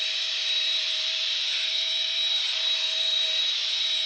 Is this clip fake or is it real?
fake